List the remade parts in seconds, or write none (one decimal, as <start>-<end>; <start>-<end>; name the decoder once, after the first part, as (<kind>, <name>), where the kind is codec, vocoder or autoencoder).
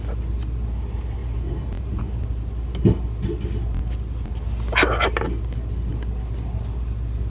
1.2-2.0 (vocoder, BigVGAN v2)